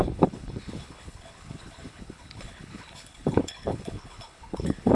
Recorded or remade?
remade